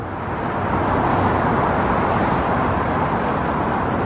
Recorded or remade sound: recorded